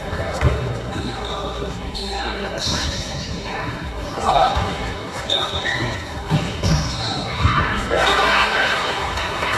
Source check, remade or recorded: remade